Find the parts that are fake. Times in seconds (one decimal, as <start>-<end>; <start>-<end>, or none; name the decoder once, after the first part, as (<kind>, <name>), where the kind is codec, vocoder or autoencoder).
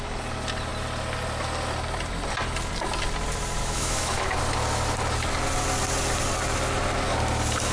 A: 3.6-4.4 (autoencoder, DAC-VAE)